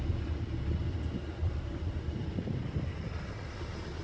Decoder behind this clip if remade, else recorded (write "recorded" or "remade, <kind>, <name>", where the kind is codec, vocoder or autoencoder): recorded